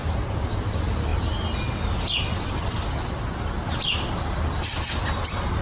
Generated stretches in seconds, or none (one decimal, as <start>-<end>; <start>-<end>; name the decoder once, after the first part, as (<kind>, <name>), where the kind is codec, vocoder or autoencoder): none

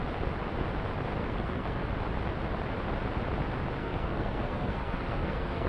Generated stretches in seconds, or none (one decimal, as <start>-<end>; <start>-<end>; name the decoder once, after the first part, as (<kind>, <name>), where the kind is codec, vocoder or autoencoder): 1.2-1.9 (codec, SNAC); 3.8-5.7